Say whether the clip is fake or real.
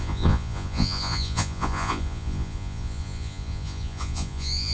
fake